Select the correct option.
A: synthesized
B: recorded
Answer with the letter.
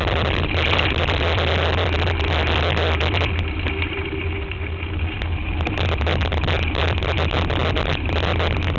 B